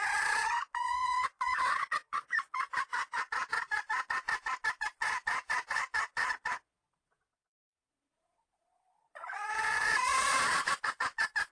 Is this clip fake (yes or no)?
yes